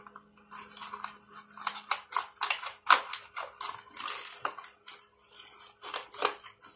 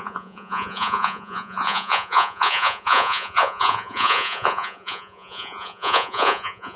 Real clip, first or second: first